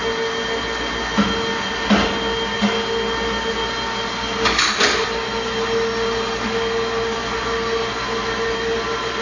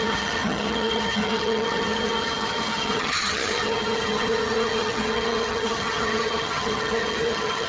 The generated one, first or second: second